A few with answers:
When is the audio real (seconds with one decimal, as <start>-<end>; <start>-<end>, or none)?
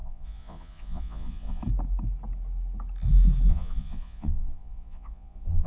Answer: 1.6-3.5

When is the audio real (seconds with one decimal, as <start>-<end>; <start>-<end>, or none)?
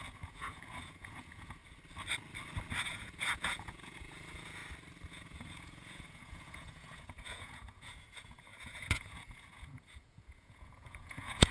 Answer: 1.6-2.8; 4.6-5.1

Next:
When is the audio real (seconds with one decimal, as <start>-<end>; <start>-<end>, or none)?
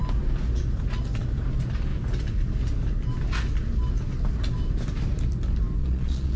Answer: 0.0-5.8